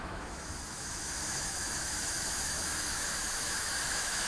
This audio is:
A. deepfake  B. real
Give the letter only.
A